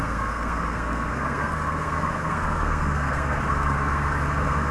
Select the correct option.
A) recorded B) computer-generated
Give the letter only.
B